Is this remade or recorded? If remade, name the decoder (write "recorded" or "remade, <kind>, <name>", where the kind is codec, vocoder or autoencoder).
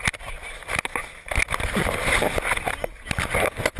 recorded